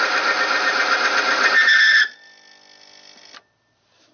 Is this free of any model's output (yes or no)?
yes